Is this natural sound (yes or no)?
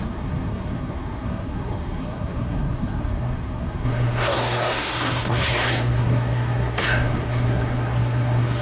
no